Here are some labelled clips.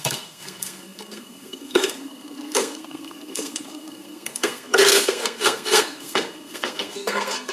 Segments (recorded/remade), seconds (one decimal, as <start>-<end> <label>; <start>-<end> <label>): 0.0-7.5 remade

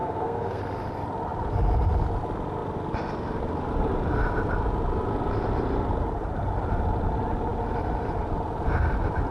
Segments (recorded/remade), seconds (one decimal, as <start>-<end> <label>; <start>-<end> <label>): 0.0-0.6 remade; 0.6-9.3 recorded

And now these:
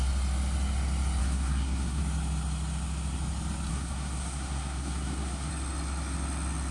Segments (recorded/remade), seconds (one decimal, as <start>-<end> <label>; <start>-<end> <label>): 0.0-1.2 recorded; 1.2-2.0 remade; 2.0-3.7 recorded; 3.7-5.5 remade; 5.5-6.7 recorded

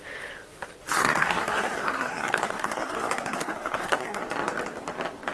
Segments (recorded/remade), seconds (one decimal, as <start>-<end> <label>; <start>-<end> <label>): 0.0-1.0 recorded; 1.0-4.2 remade; 4.2-5.3 recorded

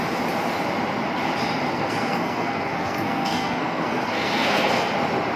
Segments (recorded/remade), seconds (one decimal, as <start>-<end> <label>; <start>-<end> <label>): 0.0-1.7 recorded; 1.7-4.9 remade; 4.9-5.4 recorded

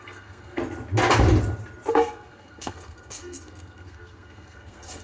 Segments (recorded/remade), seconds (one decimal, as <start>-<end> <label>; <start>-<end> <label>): 0.0-0.6 remade; 0.6-1.9 recorded; 1.9-5.0 remade

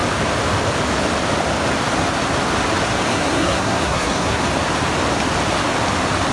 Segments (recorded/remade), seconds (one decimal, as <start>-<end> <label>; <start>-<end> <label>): 0.0-3.1 recorded; 3.1-4.4 remade; 4.4-6.3 recorded

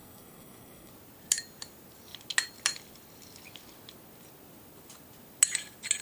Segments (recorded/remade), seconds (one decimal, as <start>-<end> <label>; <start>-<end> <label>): 0.0-0.9 remade; 0.9-6.0 recorded